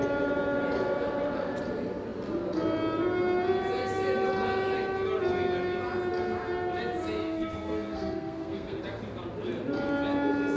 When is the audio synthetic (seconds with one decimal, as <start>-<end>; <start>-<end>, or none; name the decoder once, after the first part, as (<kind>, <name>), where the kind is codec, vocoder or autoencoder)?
7.2-8.8 (codec, SNAC)